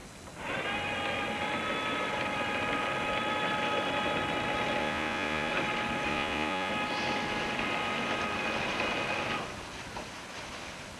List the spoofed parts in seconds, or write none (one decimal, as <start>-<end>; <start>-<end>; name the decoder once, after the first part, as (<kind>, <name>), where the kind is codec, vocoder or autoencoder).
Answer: 4.8-5.5 (vocoder, Vocos); 6.1-6.7